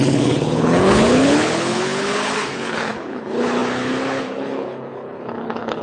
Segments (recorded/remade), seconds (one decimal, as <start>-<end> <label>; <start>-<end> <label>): 0.0-5.8 remade